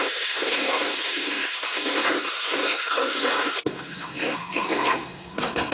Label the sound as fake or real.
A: fake